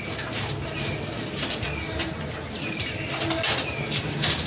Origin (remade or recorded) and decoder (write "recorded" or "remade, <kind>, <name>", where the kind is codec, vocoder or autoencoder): recorded